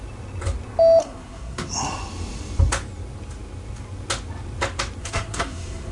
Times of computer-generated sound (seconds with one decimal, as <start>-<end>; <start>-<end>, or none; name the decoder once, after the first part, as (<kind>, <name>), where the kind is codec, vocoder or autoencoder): 1.0-1.7 (codec, SNAC); 5.0-5.9